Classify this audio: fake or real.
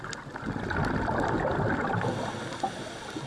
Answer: real